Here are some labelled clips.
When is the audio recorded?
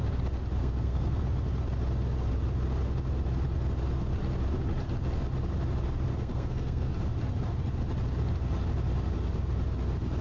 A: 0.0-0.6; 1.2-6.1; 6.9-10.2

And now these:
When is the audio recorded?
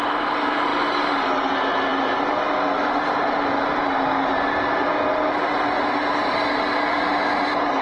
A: 0.0-7.8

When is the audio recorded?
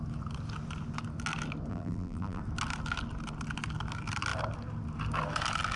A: 0.0-1.7; 2.4-5.8